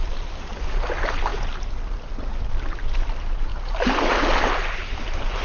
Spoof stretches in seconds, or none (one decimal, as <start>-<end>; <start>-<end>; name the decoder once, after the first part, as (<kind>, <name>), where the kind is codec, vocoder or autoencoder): none